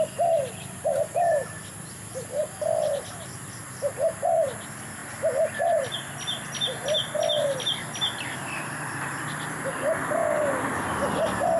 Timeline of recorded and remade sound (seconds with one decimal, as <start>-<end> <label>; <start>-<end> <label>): 0.0-11.6 recorded